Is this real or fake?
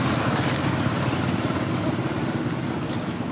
real